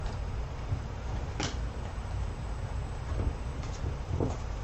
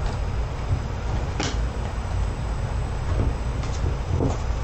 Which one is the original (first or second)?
second